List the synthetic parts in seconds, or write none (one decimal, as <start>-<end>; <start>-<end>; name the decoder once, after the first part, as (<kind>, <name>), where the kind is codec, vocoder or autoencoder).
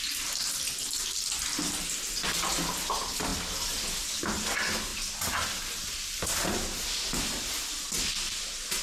none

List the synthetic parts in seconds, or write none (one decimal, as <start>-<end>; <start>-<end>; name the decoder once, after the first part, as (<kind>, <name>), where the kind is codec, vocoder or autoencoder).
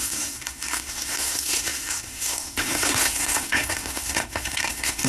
0.0-5.1 (codec, SNAC)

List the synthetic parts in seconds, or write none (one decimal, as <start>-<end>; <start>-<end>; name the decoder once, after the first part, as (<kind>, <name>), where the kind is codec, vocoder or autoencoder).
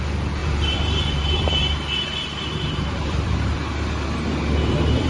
0.4-3.5 (vocoder, BigVGAN v2)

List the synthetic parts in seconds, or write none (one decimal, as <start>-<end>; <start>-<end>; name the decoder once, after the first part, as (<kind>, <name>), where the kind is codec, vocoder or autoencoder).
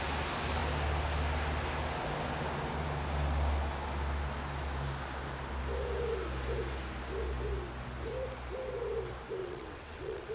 9.4-10.3 (vocoder, WaveNeXt)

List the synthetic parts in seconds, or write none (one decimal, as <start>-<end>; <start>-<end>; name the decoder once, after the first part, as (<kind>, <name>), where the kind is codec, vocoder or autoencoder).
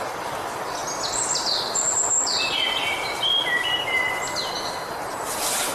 none